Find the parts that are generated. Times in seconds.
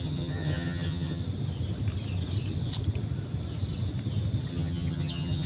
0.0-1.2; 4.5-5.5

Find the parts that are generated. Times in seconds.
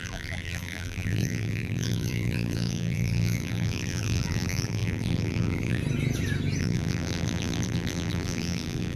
0.0-5.8; 6.6-9.0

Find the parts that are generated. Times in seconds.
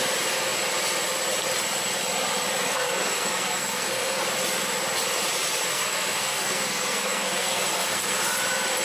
2.7-4.3; 5.7-8.2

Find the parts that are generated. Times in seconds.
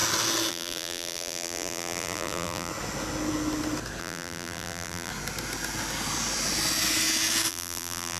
0.5-2.7; 4.0-5.1; 7.5-8.2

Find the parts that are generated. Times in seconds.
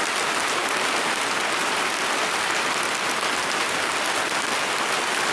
0.0-0.6; 3.3-5.3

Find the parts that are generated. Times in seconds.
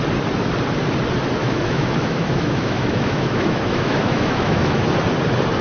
1.4-4.8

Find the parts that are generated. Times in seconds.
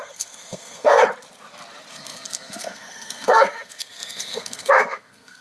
0.0-1.0; 1.9-5.4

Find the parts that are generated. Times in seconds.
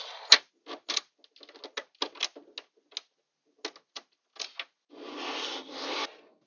none